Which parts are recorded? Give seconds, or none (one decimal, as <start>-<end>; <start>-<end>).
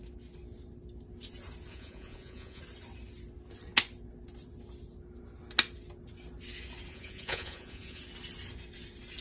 0.0-1.7; 2.6-6.9; 8.0-9.2